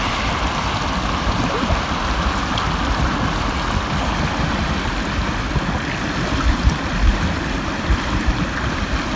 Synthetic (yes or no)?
no